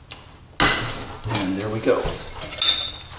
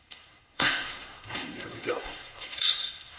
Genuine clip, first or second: first